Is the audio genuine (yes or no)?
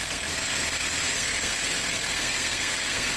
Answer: no